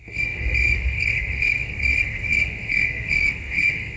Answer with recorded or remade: remade